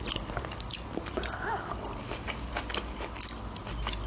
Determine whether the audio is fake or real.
real